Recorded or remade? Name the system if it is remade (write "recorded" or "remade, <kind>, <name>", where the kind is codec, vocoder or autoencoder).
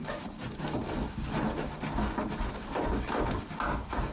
recorded